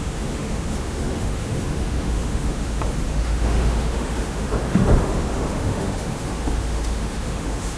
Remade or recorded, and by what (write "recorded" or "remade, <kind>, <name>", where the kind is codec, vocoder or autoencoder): remade, autoencoder, DAC-VAE